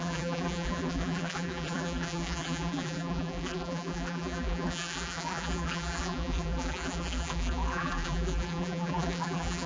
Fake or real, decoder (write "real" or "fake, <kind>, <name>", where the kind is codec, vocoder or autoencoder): fake, vocoder, BigVGAN v2